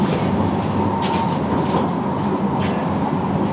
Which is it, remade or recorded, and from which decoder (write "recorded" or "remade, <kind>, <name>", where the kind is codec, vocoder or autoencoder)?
recorded